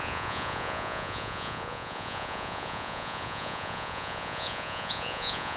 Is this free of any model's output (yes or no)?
no